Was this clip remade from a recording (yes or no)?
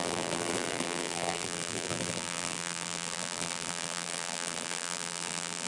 yes